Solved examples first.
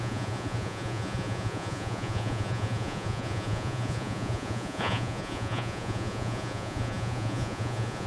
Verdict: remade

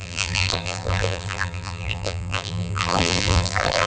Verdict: remade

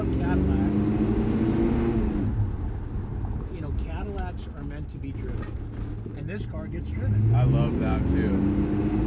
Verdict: recorded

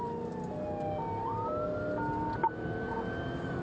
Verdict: recorded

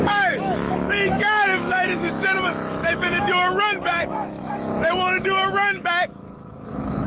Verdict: remade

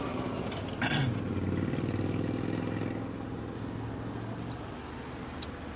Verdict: recorded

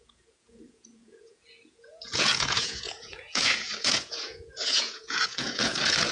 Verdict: remade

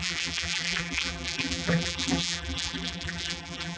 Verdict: remade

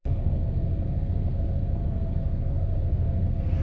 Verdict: remade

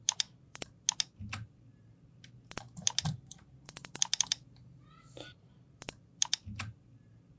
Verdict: recorded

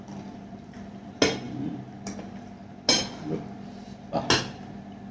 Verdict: recorded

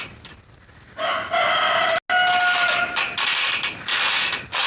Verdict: recorded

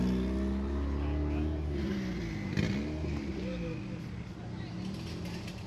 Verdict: recorded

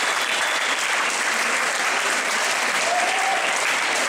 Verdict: remade